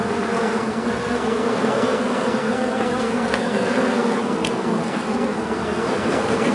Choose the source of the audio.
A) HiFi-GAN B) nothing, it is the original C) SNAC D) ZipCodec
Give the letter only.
C